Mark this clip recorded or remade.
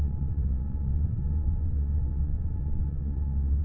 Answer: remade